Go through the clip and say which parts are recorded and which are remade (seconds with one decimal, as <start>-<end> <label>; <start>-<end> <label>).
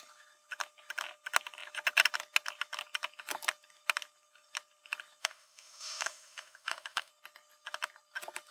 0.0-5.2 recorded; 5.2-7.1 remade; 7.1-8.5 recorded